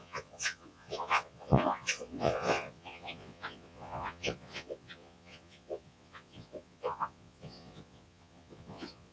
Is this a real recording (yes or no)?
no